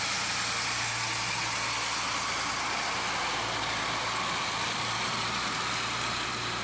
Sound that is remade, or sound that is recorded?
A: recorded